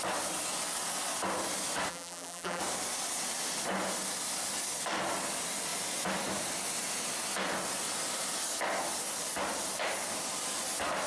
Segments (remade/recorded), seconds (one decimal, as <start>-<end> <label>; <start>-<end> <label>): 0.0-1.9 recorded; 1.9-2.6 remade; 2.6-11.1 recorded